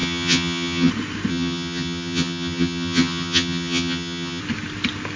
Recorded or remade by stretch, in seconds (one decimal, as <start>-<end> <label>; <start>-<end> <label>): 0.0-0.9 remade; 0.9-1.3 recorded; 1.3-4.4 remade; 4.4-5.2 recorded